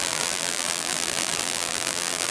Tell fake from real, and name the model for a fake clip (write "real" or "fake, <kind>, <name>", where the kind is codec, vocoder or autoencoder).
fake, vocoder, BigVGAN v2